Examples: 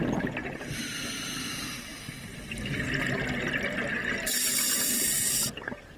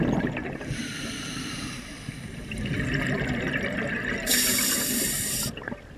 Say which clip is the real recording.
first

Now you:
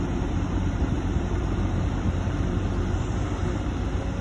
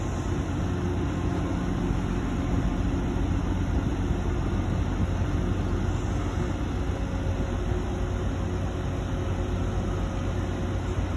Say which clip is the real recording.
second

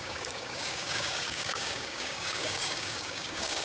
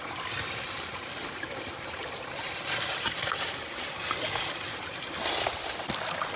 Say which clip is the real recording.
second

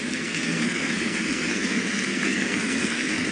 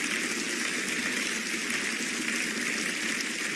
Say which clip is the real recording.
second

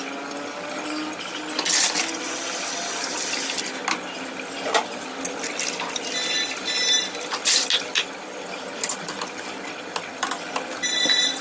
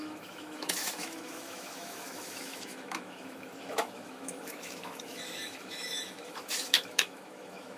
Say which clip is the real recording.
first